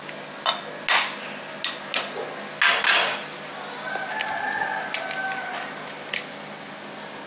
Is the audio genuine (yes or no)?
yes